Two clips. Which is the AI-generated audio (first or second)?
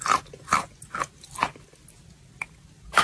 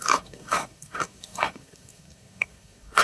second